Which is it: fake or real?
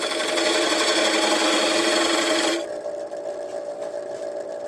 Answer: real